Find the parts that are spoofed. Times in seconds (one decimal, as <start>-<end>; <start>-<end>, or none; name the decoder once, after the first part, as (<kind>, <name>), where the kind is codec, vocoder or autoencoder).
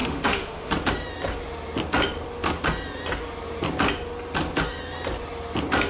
0.0-0.7 (autoencoder, DAC-VAE)